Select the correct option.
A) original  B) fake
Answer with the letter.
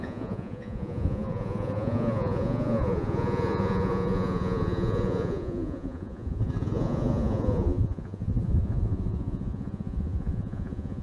B